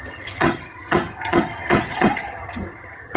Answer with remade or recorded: remade